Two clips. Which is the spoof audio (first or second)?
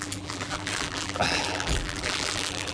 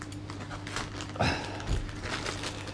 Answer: first